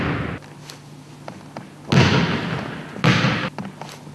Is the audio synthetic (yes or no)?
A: no